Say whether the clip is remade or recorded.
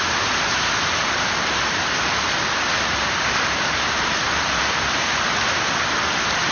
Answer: remade